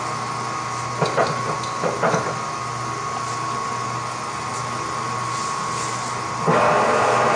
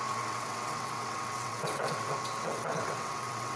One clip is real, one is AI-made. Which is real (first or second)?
first